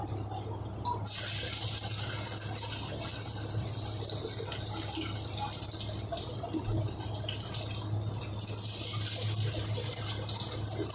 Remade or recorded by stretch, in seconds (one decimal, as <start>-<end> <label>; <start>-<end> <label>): 0.0-10.9 recorded